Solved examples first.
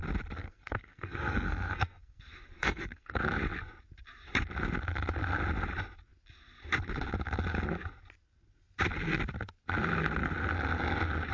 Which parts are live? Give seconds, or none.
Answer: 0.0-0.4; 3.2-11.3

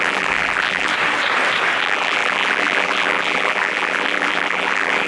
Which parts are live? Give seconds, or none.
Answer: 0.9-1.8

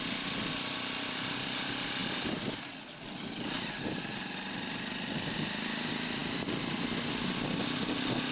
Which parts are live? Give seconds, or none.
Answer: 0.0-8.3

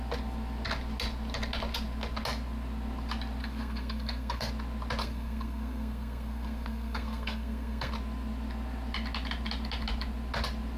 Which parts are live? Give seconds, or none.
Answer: 0.0-3.4; 4.5-5.0; 7.9-10.8

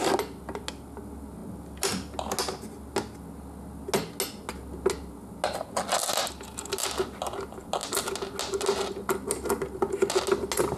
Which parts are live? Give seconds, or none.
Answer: 0.0-10.8

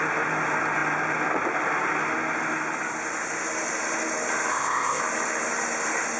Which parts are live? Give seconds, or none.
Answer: 0.0-4.5; 5.0-6.2

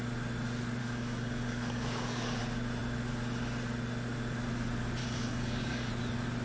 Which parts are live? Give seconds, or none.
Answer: 0.0-0.8; 2.4-5.0; 5.9-6.4

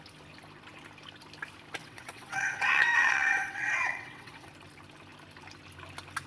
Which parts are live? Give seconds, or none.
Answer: 0.0-1.8; 4.5-6.3